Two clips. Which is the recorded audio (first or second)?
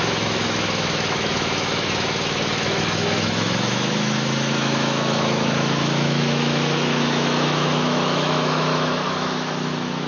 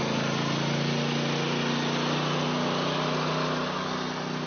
second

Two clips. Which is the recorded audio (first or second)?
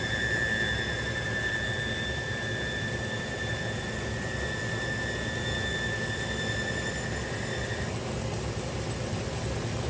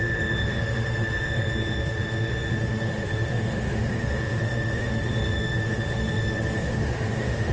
first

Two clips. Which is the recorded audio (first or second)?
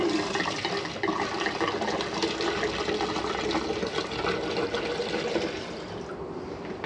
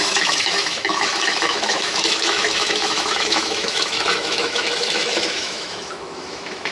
first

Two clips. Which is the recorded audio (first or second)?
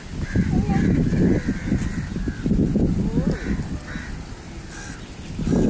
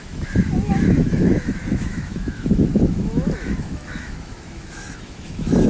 first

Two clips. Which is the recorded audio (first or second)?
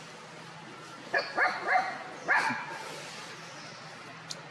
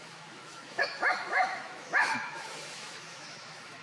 first